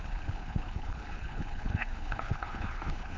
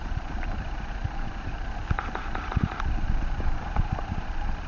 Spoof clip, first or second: first